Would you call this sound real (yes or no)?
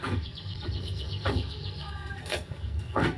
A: no